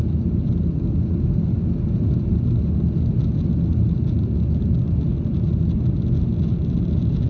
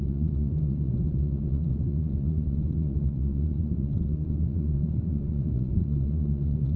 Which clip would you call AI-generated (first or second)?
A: second